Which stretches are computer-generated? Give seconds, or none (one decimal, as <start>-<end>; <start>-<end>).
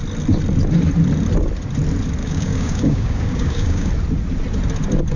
2.2-3.9